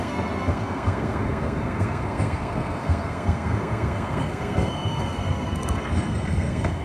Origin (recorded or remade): remade